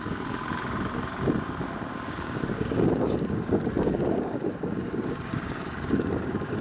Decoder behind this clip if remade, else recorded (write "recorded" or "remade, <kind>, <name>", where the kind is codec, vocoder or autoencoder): remade, codec, DAC